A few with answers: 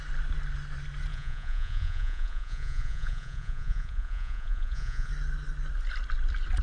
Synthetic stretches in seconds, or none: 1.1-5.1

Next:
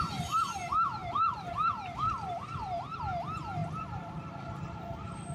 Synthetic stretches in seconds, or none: 1.0-3.0; 3.6-4.5

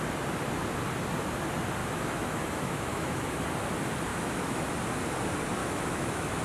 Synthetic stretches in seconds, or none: 1.8-3.4; 4.1-4.7; 5.6-6.4

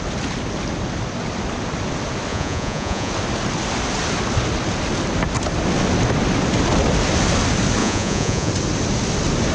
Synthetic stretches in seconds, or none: 2.3-3.1; 7.8-8.5

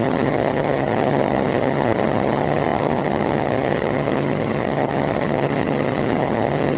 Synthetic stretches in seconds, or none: 0.0-6.8

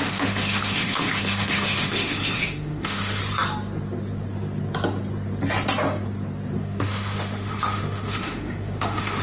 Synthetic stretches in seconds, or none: 0.0-3.2; 6.6-9.2

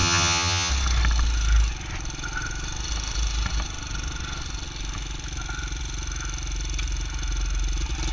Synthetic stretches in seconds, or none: 0.0-0.7

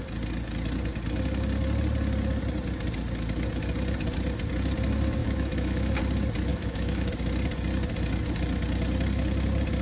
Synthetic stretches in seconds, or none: 5.2-6.0; 6.5-7.1